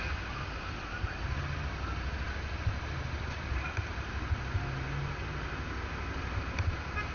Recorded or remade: recorded